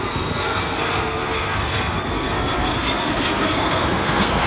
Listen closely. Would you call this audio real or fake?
fake